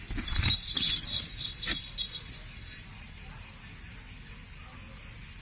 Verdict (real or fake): real